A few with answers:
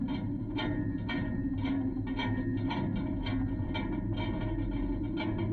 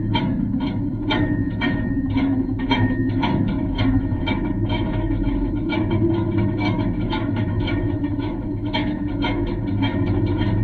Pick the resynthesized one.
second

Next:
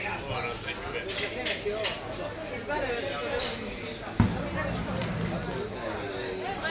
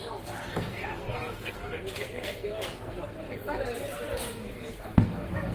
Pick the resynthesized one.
second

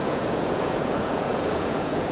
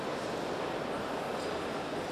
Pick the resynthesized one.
first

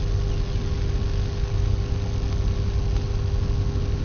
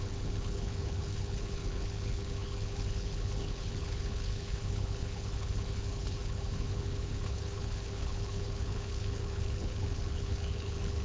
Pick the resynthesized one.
second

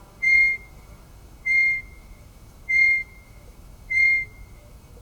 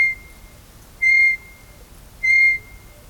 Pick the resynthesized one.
first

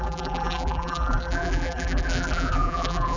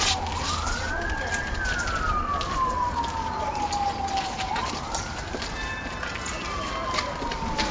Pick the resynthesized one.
first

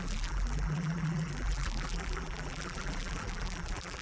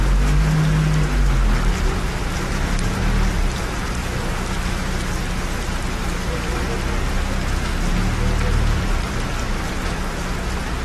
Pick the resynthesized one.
first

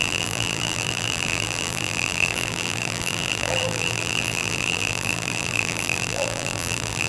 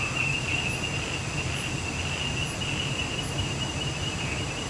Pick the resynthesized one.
first